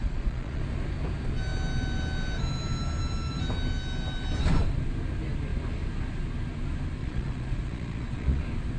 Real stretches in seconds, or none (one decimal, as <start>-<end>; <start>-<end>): 0.6-7.0; 8.4-8.8